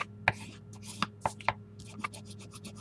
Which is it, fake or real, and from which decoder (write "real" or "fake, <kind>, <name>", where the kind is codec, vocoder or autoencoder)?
real